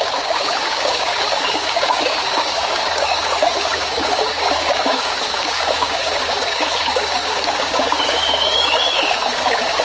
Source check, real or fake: fake